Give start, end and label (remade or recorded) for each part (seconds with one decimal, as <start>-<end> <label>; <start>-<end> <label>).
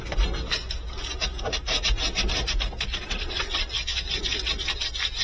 0.0-2.9 recorded; 2.9-3.7 remade; 3.7-5.2 recorded